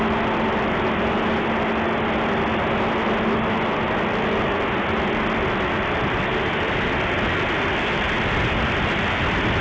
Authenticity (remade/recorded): recorded